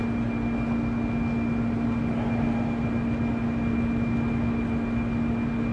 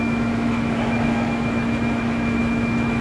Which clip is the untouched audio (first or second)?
first